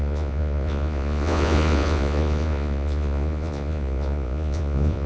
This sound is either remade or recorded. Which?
remade